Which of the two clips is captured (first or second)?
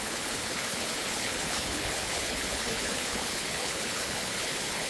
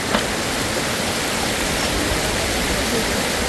second